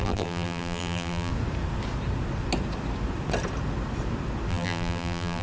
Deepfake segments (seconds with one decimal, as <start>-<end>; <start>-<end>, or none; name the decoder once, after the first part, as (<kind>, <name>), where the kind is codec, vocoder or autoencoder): 0.0-1.3 (vocoder, BigVGAN v2); 4.5-5.4